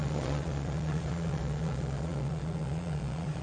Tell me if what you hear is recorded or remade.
remade